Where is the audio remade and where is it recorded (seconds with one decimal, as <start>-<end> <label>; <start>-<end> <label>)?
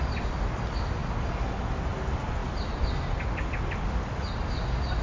0.0-5.0 recorded